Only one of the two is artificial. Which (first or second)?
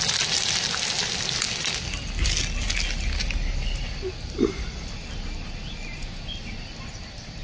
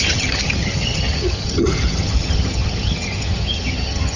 second